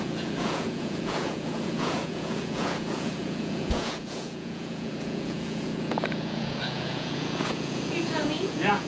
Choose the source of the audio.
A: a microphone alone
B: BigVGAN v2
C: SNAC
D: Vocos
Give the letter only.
D